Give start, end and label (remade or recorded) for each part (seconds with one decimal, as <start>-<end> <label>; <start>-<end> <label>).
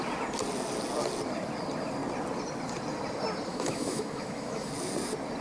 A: 0.0-3.5 recorded; 3.5-4.7 remade; 4.7-5.4 recorded